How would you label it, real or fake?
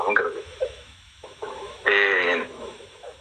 fake